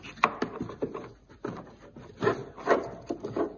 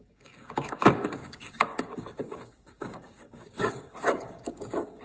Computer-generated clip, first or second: second